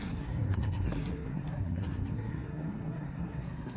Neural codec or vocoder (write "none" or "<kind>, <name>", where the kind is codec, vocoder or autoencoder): codec, SNAC